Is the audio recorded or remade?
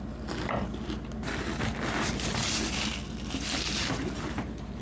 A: recorded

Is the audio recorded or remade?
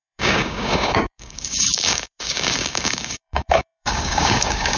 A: remade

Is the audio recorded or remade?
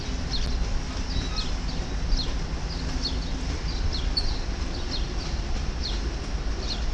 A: recorded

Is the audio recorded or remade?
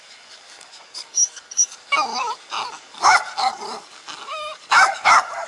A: remade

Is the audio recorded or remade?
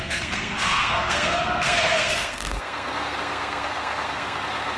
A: remade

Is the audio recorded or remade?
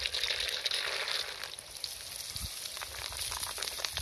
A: recorded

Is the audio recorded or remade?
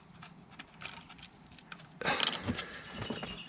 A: recorded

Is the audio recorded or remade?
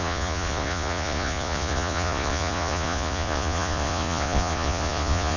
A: remade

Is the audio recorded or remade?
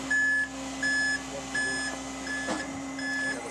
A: recorded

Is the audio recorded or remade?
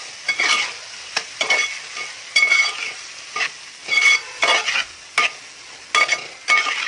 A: recorded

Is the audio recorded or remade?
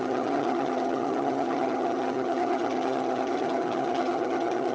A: remade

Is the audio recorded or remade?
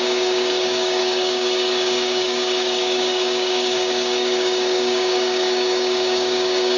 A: remade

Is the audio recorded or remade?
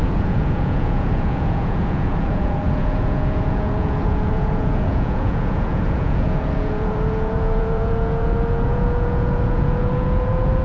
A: remade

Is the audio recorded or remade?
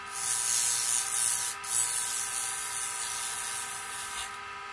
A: recorded